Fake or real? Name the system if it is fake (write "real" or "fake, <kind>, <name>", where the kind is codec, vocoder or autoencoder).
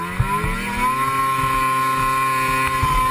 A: real